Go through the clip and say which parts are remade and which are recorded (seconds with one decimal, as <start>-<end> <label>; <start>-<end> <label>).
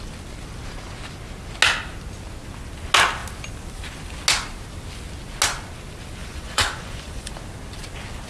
0.0-6.2 recorded; 6.2-7.3 remade; 7.3-8.3 recorded